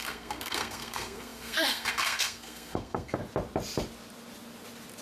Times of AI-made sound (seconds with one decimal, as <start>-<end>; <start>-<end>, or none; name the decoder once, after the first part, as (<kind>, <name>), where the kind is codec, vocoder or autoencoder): 0.0-3.2 (codec, SNAC)